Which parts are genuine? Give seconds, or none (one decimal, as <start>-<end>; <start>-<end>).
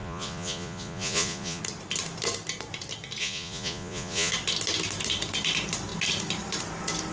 1.6-3.2; 4.3-7.1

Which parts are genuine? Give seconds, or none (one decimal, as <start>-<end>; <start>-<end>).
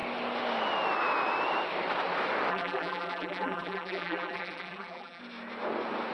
0.0-2.5; 5.2-6.1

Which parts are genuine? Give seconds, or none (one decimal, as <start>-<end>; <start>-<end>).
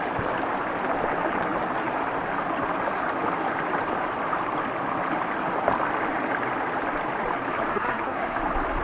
0.0-7.7; 8.4-8.8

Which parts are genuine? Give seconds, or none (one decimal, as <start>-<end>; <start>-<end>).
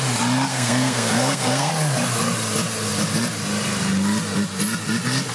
0.0-0.5; 1.7-5.3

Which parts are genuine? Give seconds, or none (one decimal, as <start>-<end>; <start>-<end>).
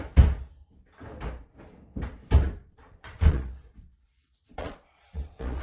0.0-2.6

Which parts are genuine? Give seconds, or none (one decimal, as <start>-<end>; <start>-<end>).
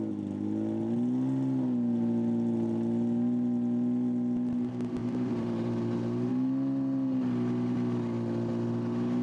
0.0-5.0; 6.3-9.2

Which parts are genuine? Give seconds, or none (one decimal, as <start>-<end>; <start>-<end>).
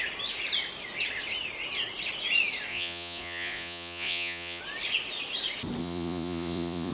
0.0-2.7; 4.6-5.8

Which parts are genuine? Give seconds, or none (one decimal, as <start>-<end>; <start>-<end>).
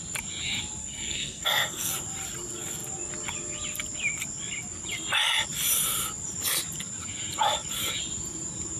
0.0-0.8; 1.9-8.8